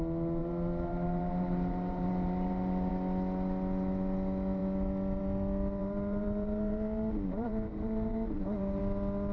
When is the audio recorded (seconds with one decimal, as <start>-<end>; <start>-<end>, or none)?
0.0-0.4; 2.9-5.8; 8.8-9.3